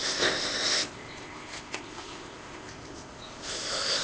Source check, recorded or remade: remade